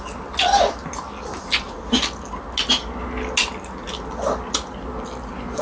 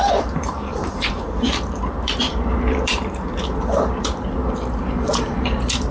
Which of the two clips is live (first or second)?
first